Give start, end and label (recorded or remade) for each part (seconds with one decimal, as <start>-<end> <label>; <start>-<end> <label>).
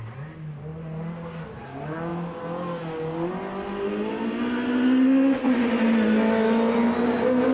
0.0-7.5 recorded